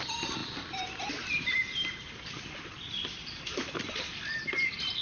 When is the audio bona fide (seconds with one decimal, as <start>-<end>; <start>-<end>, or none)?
none